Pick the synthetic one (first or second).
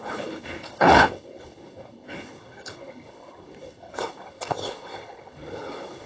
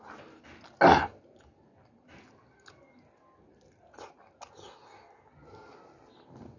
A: first